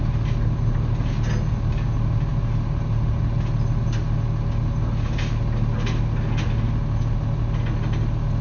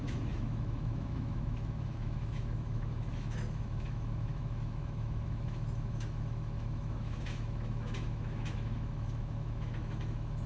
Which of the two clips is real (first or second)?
first